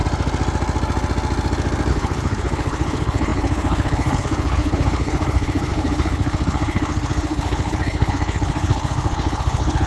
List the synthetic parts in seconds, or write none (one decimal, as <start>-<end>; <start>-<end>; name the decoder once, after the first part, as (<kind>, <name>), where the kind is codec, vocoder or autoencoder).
1.9-9.9 (codec, HILCodec)